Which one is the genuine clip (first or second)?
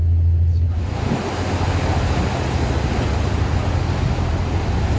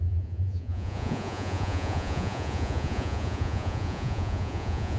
first